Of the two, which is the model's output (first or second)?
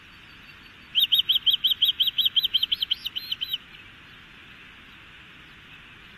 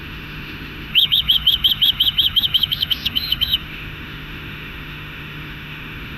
second